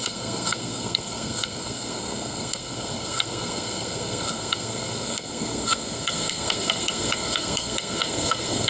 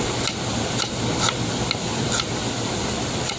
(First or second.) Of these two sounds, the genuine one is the second